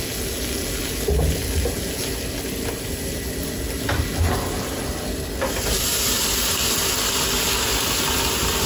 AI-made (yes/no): no